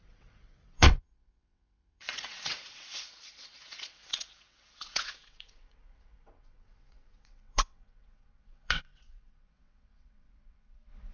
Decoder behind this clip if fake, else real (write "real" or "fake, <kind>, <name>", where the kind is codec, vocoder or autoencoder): fake, vocoder, WaveNeXt